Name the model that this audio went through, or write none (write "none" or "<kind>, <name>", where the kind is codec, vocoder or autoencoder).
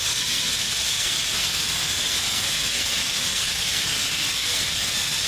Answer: codec, SNAC